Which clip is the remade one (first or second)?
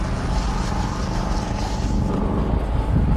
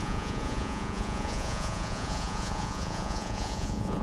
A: second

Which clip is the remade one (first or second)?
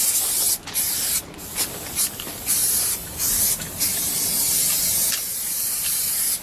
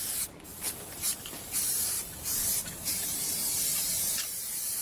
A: second